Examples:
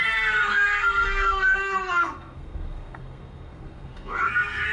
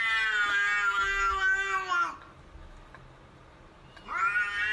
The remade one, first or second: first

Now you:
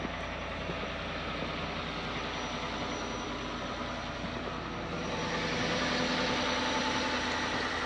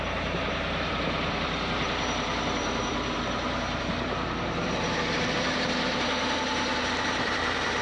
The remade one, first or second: second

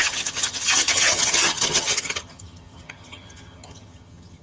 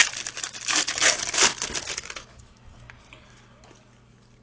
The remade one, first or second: first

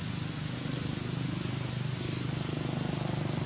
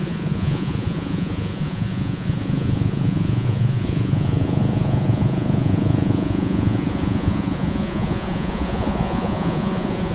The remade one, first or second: second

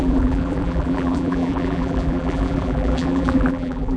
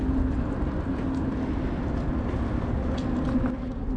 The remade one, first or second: first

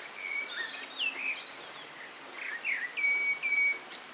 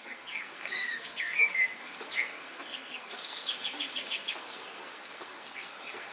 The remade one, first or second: second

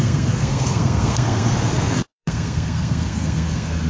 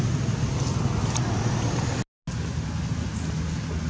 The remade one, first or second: first